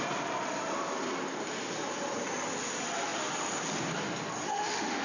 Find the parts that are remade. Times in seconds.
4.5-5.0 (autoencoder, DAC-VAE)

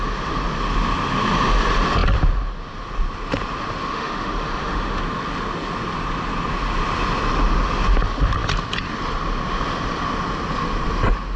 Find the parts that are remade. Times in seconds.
3.9-5.0 (autoencoder, DAC-VAE)

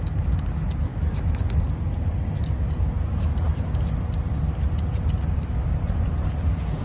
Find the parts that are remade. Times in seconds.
0.9-1.6 (autoencoder, DAC-VAE)

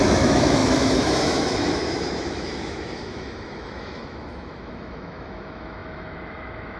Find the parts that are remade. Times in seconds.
0.0-6.8 (autoencoder, DAC-VAE)

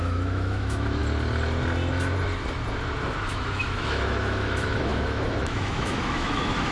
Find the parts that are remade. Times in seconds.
0.0-1.0 (autoencoder, DAC-VAE); 3.3-6.7

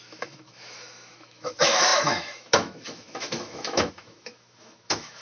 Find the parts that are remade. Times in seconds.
0.0-5.2 (autoencoder, DAC-VAE)

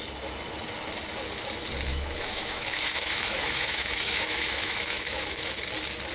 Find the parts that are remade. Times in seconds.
1.9-5.6 (autoencoder, DAC-VAE)